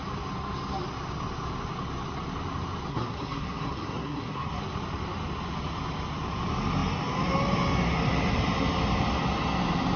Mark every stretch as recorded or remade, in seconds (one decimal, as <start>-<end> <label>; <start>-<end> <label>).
0.0-2.9 recorded; 2.9-4.6 remade; 4.6-10.0 recorded